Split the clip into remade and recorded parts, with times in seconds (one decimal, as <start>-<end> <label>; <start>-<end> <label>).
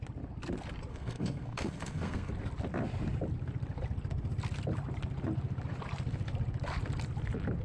0.0-0.9 recorded; 0.9-2.3 remade; 2.3-7.6 recorded